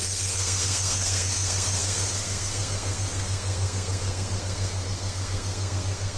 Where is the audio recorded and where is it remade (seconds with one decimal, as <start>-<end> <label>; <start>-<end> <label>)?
0.0-6.2 remade